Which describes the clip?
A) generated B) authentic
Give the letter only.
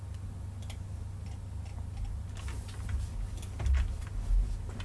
B